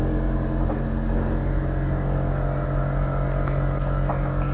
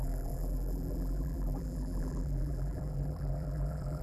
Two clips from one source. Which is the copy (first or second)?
second